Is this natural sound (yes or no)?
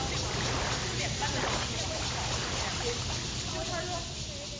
yes